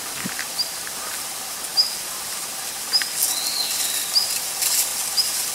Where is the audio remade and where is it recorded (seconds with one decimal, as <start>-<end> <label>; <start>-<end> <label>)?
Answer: 0.0-5.5 recorded